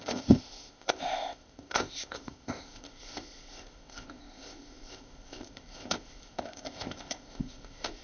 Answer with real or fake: fake